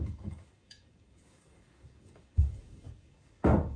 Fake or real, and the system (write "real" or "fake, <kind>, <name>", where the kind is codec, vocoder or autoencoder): fake, codec, DAC